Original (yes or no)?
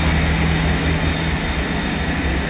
yes